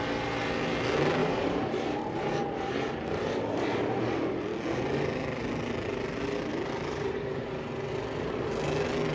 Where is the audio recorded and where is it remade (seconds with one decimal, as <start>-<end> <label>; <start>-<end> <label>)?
0.0-1.2 recorded; 1.2-4.2 remade; 4.2-6.5 recorded; 6.5-7.9 remade; 7.9-9.1 recorded